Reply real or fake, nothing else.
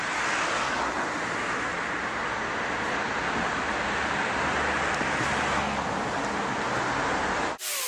real